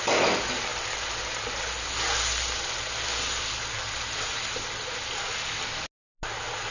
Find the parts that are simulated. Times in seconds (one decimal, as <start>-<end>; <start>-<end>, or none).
none